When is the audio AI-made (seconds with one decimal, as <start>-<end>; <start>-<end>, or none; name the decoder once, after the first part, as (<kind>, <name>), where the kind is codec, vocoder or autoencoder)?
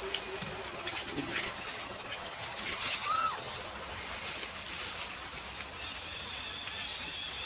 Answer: 0.7-3.6 (vocoder, HiFi-GAN)